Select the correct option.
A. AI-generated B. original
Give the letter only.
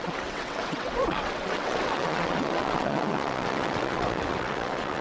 A